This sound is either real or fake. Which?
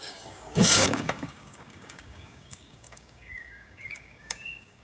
fake